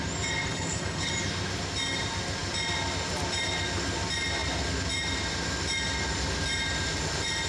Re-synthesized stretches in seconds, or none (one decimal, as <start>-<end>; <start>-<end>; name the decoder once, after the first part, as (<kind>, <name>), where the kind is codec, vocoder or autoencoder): 0.5-1.1 (codec, HILCodec)